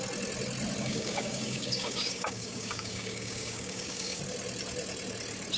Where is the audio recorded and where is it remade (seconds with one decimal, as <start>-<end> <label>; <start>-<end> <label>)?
0.0-0.8 recorded; 0.8-4.2 remade; 4.2-5.6 recorded